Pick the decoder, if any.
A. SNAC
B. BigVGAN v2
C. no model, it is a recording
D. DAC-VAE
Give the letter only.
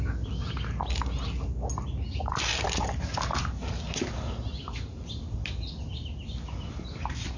C